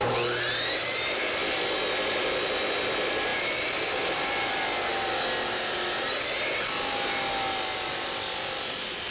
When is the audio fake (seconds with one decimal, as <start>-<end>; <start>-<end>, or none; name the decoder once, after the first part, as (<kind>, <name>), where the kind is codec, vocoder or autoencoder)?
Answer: none